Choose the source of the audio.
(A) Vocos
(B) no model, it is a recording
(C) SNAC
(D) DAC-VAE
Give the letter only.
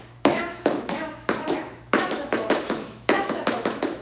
D